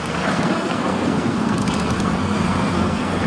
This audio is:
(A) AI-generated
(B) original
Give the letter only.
A